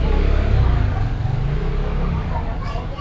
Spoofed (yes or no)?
yes